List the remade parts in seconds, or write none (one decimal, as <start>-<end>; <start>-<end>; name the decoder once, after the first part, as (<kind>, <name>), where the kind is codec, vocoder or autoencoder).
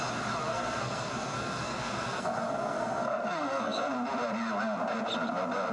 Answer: 0.5-3.9 (codec, SNAC)